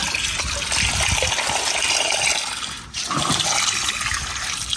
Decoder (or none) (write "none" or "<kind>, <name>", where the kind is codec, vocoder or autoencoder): none